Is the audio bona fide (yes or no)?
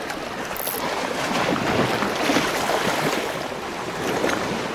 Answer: yes